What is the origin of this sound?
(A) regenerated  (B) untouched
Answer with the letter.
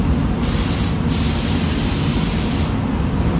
B